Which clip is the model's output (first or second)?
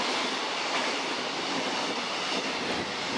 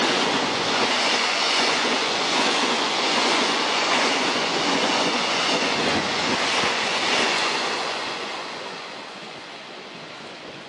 second